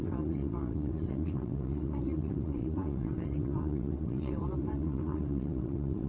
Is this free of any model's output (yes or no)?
no